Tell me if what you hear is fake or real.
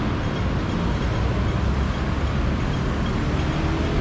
real